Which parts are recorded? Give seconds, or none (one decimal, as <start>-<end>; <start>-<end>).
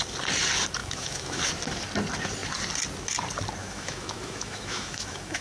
0.0-0.8; 1.4-3.6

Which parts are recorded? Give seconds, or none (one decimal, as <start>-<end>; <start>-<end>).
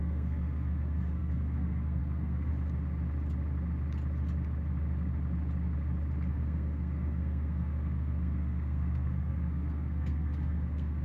2.5-6.3